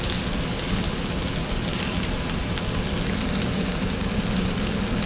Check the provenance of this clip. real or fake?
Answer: real